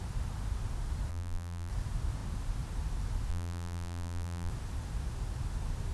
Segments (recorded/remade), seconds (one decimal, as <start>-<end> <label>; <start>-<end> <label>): 0.0-1.1 recorded; 1.1-1.7 remade; 1.7-3.3 recorded; 3.3-4.5 remade; 4.5-5.9 recorded